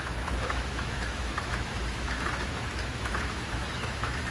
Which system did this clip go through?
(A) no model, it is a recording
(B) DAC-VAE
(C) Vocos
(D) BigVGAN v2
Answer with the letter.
B